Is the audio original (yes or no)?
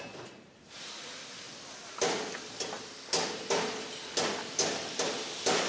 yes